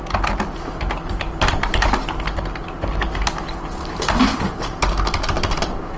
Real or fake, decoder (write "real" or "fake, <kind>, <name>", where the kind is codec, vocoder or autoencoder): real